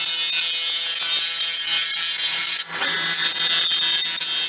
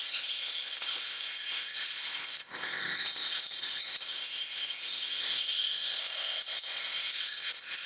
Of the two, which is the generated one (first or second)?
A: second